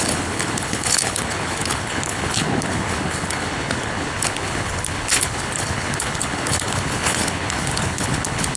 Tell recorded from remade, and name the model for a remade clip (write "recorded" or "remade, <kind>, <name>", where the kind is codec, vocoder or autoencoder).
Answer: remade, codec, HILCodec